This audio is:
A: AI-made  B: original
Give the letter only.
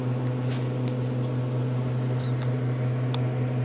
B